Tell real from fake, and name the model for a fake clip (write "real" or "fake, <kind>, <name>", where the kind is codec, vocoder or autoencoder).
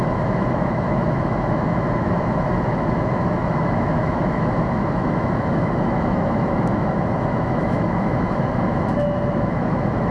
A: fake, autoencoder, DAC-VAE